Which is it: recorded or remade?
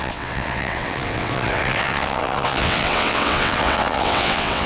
remade